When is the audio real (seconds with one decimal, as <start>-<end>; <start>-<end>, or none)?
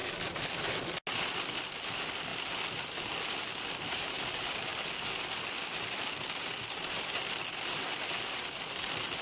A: 0.0-1.9